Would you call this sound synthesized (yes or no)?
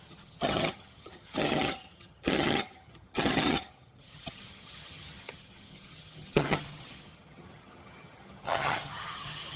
yes